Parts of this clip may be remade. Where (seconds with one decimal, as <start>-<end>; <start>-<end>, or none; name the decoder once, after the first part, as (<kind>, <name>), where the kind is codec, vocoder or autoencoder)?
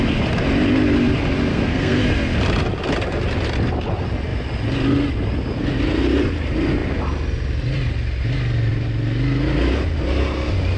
1.5-2.0 (codec, SNAC)